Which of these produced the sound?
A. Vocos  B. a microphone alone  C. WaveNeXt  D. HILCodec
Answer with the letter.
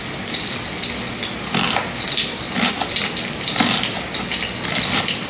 B